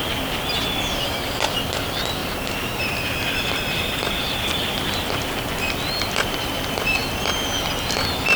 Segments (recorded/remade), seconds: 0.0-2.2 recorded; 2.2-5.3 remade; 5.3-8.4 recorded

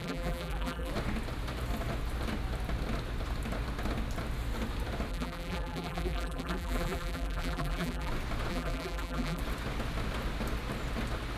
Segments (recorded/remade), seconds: 0.0-0.9 remade; 0.9-5.1 recorded; 5.1-8.1 remade; 8.1-8.5 recorded; 8.5-9.4 remade; 9.4-11.4 recorded

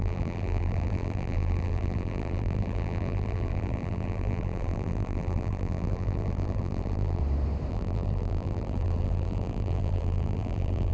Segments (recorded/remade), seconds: 0.0-7.2 remade; 7.2-7.7 recorded; 7.7-10.9 remade

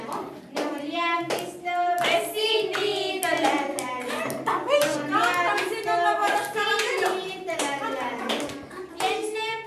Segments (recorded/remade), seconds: 0.0-6.2 recorded; 6.2-8.3 remade; 8.3-9.7 recorded